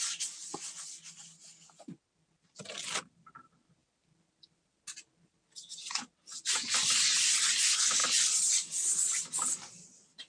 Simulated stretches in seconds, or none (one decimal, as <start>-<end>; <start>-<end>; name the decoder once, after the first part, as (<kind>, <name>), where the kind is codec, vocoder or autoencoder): none